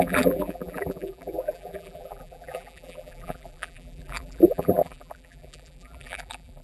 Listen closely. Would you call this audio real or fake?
fake